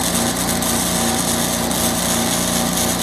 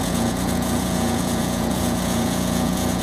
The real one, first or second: first